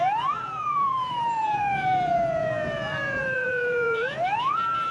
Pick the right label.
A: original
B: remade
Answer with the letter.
B